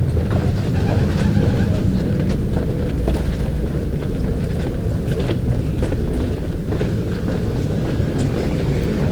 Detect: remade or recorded recorded